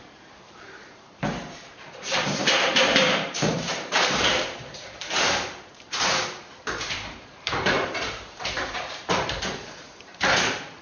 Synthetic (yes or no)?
yes